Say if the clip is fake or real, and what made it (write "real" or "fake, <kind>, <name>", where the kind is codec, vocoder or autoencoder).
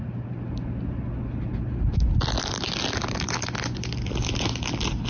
real